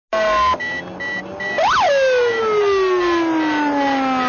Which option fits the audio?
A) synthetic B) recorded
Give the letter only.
B